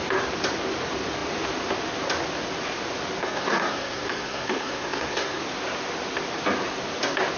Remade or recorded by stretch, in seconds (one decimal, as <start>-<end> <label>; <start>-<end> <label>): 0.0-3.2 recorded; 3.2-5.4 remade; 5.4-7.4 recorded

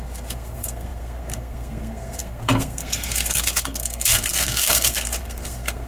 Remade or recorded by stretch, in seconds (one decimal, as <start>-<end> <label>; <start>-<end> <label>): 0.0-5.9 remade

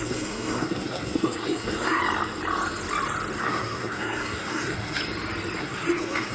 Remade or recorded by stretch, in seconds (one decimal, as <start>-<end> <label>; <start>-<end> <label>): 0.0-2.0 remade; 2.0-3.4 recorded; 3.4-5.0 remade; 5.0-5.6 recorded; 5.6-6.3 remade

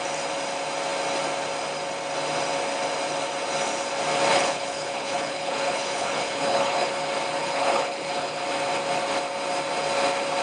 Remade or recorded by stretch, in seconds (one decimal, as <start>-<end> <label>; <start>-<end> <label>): 0.0-4.3 recorded; 4.3-6.9 remade; 6.9-7.4 recorded; 7.4-8.4 remade; 8.4-10.4 recorded

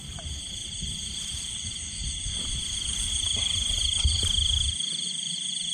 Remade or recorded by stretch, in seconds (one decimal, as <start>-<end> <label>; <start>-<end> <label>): 0.0-5.7 recorded

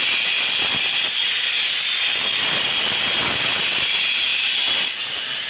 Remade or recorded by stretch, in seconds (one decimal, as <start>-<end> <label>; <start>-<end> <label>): 0.0-5.5 recorded